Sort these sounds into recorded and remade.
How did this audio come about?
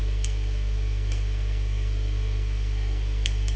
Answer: remade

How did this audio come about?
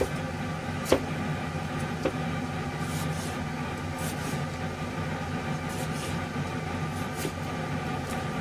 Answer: recorded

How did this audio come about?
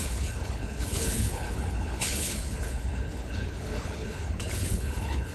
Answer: remade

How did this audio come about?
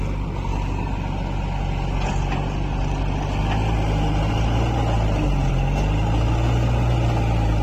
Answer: recorded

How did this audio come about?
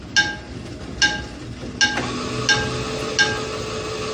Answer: recorded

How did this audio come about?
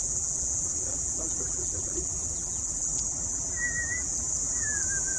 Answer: remade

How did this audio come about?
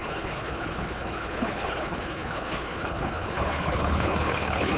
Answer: remade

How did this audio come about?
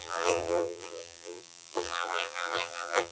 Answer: remade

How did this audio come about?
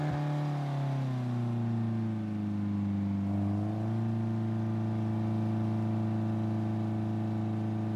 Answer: recorded